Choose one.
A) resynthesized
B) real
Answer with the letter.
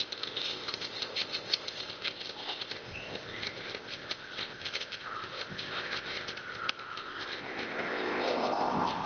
A